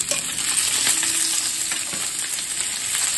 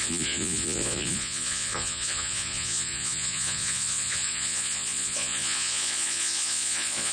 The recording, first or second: first